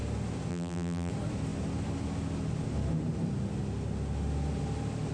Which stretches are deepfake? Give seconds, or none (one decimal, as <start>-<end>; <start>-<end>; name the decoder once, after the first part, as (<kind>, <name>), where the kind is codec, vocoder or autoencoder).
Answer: 0.5-1.1 (vocoder, BigVGAN v2)